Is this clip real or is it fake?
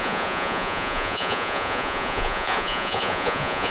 fake